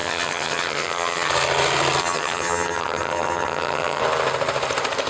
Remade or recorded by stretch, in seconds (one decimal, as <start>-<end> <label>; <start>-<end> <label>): 0.0-1.3 remade; 1.3-2.0 recorded; 2.0-4.0 remade; 4.0-5.1 recorded